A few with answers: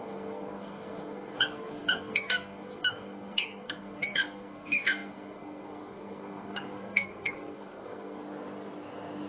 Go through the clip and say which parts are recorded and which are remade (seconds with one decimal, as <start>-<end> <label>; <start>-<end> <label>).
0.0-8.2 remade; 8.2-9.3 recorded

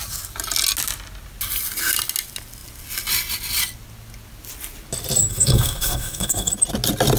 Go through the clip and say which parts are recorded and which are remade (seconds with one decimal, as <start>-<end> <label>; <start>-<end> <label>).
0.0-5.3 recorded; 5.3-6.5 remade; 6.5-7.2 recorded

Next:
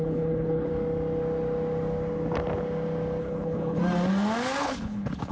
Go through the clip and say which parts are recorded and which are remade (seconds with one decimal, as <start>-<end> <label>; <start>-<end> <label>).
0.0-0.7 remade; 0.7-3.2 recorded; 3.2-3.8 remade; 3.8-4.6 recorded; 4.6-5.3 remade

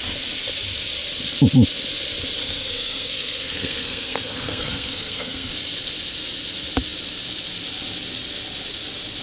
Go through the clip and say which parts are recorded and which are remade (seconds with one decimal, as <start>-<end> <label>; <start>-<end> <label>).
0.0-2.4 recorded; 2.4-5.5 remade; 5.5-9.2 recorded